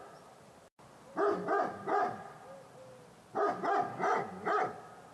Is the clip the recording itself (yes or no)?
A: yes